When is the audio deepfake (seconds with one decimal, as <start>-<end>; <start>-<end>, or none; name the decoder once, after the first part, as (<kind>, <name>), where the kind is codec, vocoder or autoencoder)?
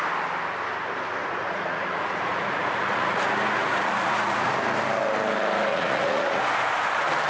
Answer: 1.2-3.2 (vocoder, Vocos); 3.6-4.6; 5.7-6.4